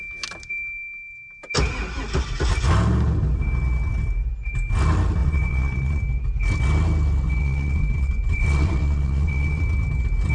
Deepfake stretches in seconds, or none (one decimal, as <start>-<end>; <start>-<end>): 5.2-6.0; 7.4-9.6